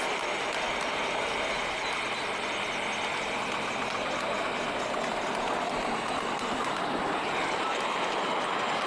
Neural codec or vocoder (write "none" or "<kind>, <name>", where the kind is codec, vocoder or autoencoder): none